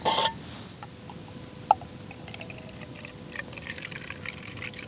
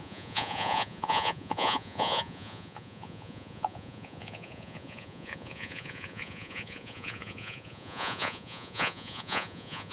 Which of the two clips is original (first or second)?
first